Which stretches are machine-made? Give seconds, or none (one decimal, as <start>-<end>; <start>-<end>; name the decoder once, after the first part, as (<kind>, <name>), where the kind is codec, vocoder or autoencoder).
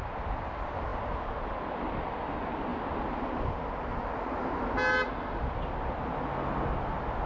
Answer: none